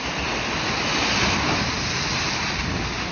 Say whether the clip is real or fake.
real